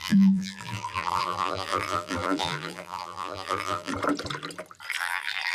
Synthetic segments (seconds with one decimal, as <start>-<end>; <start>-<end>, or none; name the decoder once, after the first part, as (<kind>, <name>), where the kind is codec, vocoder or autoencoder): 0.0-3.9 (vocoder, BigVGAN v2); 5.0-5.5